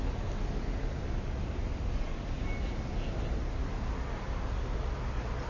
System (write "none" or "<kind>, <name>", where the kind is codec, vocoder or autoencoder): none